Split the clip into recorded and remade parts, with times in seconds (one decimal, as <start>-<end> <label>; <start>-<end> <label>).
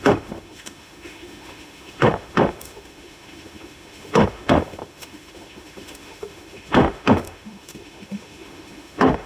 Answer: 0.0-9.3 remade